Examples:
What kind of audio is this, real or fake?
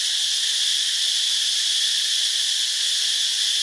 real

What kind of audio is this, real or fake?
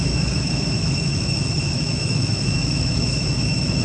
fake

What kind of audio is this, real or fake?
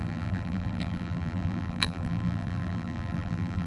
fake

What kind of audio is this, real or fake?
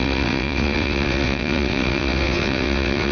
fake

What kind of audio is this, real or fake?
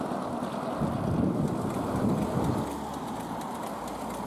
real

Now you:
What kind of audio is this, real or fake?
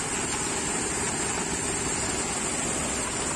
real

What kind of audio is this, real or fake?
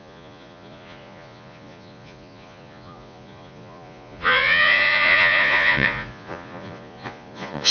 fake